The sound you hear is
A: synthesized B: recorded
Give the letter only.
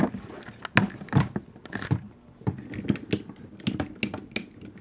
B